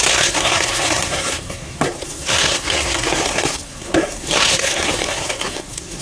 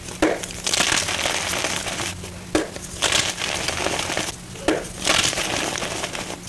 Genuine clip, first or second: second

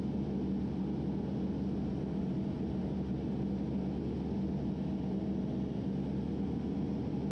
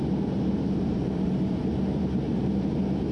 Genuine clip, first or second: first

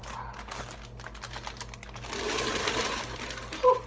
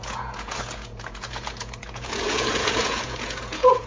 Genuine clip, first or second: first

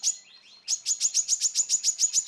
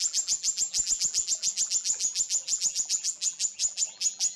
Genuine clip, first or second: first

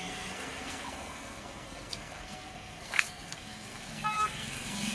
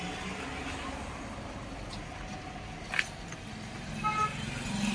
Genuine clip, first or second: second